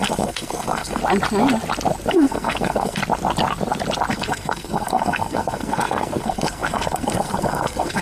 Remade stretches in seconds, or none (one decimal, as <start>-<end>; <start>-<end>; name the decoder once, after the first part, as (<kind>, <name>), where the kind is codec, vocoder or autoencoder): 0.0-1.0 (codec, SNAC); 2.1-3.0; 4.1-8.0